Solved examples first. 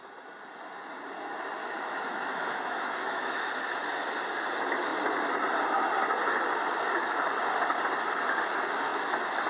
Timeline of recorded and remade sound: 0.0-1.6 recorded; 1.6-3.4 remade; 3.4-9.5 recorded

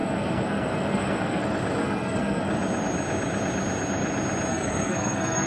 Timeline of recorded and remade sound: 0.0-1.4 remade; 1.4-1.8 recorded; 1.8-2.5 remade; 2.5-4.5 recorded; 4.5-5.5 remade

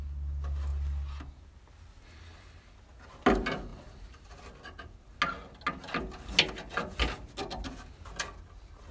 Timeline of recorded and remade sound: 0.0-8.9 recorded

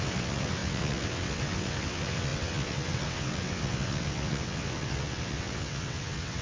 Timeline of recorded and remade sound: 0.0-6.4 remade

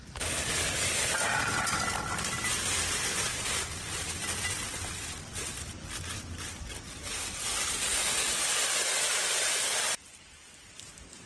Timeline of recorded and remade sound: 0.0-11.3 recorded

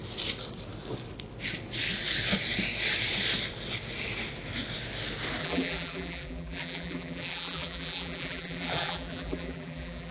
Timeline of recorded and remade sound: 0.0-5.4 recorded; 5.4-10.1 remade

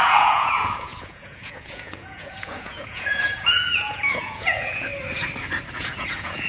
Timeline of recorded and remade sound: 0.0-4.9 remade; 4.9-5.7 recorded; 5.7-6.5 remade

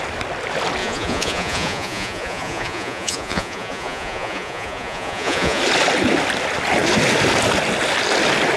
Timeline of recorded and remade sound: 0.0-0.8 recorded; 0.8-5.6 remade; 5.6-8.6 recorded